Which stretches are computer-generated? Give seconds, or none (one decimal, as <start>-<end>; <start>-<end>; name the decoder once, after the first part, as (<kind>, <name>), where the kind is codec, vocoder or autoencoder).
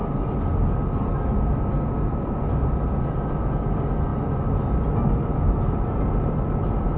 none